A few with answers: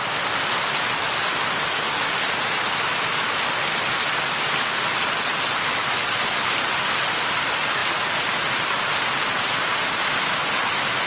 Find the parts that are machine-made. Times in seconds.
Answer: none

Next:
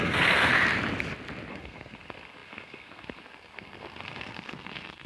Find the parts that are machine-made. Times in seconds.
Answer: 0.0-0.5 (codec, SNAC); 1.5-5.1